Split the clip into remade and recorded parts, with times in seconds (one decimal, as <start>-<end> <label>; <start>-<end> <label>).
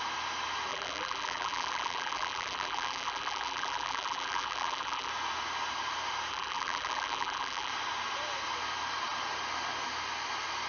0.0-0.7 recorded; 0.7-5.1 remade; 5.1-6.3 recorded; 6.3-7.7 remade; 7.7-10.7 recorded